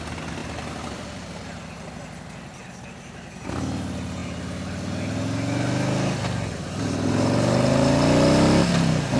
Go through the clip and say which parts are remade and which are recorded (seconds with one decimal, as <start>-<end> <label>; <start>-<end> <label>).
0.0-9.2 recorded